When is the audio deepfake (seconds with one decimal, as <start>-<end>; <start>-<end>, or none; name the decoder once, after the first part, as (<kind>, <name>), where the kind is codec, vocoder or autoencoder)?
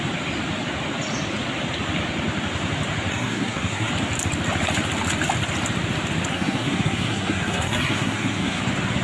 3.1-3.9 (codec, SNAC); 6.3-8.6